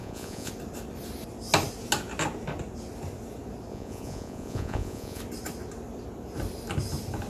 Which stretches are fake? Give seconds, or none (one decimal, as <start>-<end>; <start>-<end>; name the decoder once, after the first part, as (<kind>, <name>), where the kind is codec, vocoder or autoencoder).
0.0-0.5 (vocoder, Vocos); 3.7-5.2